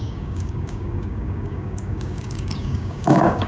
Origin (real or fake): fake